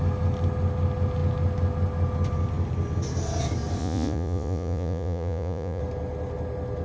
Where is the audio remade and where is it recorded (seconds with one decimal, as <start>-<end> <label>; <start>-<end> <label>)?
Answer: 0.0-3.8 recorded; 3.8-5.8 remade; 5.8-6.8 recorded